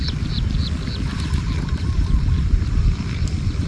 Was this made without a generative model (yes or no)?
yes